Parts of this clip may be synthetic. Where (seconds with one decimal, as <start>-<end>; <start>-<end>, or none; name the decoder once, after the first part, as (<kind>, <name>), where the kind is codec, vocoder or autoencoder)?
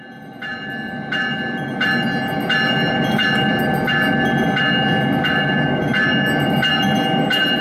none